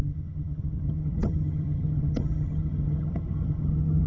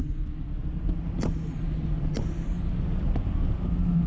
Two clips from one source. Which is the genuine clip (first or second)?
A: second